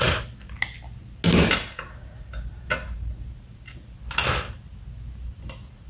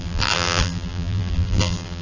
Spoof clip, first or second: second